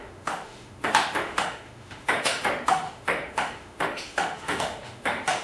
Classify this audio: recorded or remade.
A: remade